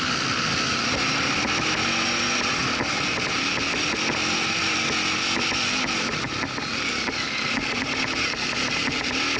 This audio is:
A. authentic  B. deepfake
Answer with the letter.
A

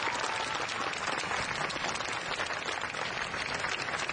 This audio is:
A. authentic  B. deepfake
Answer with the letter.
A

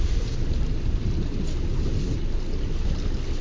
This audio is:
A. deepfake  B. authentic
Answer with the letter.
B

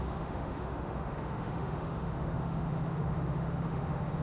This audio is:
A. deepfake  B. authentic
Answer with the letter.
A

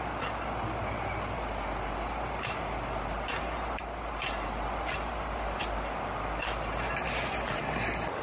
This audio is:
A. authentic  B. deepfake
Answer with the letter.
A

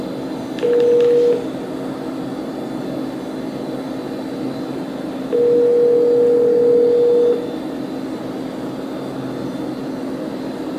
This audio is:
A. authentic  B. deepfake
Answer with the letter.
A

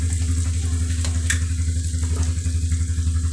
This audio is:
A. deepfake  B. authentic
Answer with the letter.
B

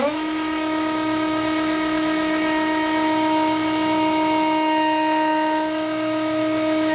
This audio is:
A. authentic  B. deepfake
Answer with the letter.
B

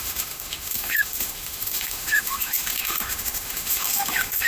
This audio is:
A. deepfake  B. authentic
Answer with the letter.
A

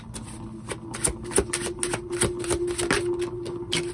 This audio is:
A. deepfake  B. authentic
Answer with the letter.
B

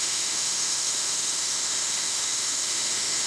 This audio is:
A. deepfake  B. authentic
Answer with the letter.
A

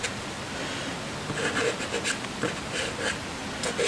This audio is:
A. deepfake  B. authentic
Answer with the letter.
B